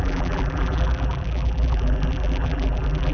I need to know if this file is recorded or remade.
remade